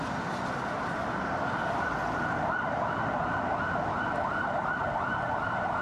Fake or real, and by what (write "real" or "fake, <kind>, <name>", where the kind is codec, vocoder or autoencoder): real